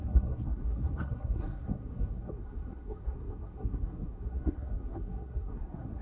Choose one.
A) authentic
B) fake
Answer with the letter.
B